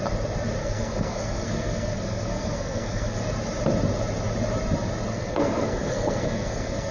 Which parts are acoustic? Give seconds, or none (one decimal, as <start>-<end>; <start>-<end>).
0.0-0.6; 3.2-5.1